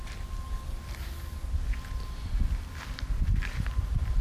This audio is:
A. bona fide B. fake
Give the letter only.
A